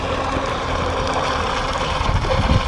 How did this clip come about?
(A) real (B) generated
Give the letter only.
A